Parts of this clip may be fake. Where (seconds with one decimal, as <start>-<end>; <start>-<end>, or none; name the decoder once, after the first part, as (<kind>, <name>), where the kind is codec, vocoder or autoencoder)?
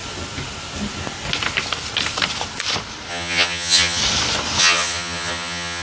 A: 3.1-4.0 (vocoder, HiFi-GAN); 4.6-5.8